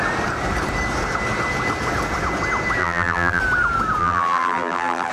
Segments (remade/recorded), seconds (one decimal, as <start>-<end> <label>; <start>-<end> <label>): 0.0-2.8 recorded; 2.8-3.4 remade; 3.4-4.0 recorded; 4.0-5.1 remade

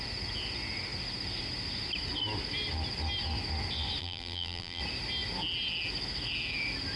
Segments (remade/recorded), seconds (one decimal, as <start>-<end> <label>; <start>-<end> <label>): 0.0-4.0 recorded; 4.0-4.8 remade; 4.8-7.0 recorded

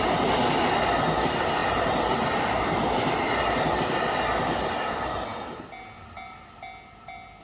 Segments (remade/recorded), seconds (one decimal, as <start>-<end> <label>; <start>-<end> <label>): 0.0-7.4 recorded

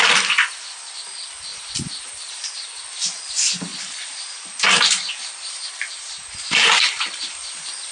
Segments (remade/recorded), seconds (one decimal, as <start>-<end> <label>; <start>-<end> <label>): 0.0-1.5 recorded; 1.5-2.8 remade; 2.8-3.7 recorded; 3.7-7.9 remade